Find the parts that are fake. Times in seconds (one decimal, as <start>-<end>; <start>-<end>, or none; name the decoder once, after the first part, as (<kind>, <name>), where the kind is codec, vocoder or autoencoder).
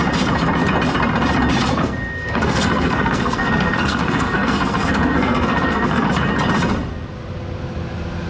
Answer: 1.7-6.1 (codec, SNAC)